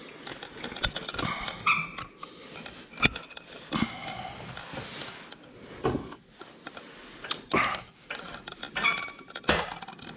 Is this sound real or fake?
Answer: real